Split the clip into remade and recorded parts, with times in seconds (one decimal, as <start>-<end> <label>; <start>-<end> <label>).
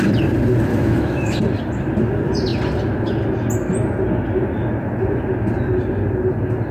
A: 0.0-0.7 recorded; 0.7-1.4 remade; 1.4-6.7 recorded